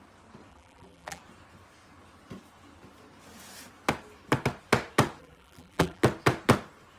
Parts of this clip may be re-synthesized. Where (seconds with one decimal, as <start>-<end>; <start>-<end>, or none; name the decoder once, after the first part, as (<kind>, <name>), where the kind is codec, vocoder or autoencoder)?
0.5-1.2 (vocoder, BigVGAN v2); 5.2-6.0